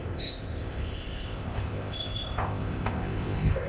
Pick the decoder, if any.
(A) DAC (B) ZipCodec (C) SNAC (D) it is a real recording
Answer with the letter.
B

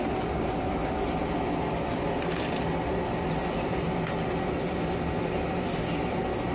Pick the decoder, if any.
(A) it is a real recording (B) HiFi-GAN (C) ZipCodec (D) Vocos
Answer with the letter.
A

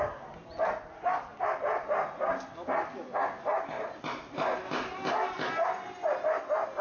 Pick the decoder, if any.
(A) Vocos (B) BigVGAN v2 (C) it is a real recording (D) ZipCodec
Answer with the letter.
C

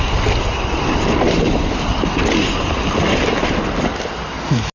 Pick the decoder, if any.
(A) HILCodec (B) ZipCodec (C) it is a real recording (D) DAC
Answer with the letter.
C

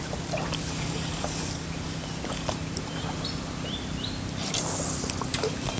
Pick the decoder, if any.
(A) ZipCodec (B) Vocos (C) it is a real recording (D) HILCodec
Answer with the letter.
C